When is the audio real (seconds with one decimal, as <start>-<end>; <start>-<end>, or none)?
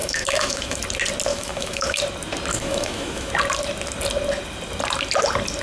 0.8-1.3; 2.0-2.5; 3.3-5.6